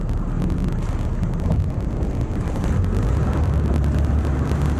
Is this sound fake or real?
real